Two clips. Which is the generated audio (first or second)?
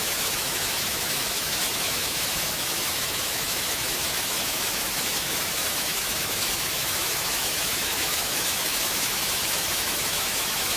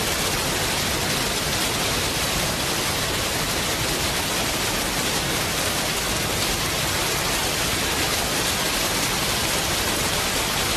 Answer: first